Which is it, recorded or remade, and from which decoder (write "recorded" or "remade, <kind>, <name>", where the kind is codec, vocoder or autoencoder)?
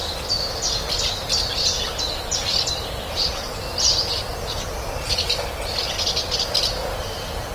recorded